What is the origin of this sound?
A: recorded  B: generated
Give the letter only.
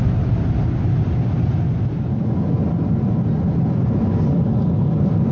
A